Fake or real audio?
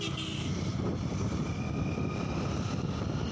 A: real